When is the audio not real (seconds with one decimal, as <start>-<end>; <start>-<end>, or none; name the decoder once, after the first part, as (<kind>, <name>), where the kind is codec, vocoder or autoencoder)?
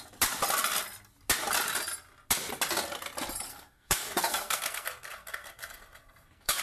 3.5-6.6 (codec, SNAC)